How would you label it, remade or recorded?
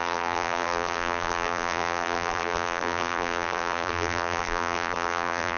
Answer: remade